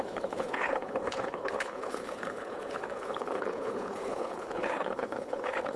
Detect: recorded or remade remade